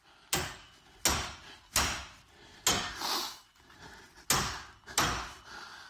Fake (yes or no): no